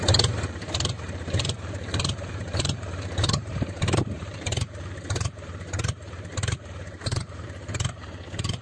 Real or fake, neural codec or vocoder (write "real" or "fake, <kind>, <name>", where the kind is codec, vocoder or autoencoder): fake, vocoder, BigVGAN v2